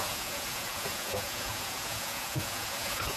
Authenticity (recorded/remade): remade